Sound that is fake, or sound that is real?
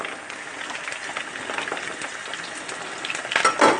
real